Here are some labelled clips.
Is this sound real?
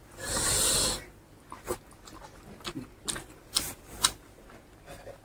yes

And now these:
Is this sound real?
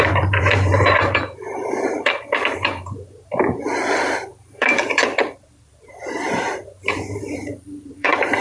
no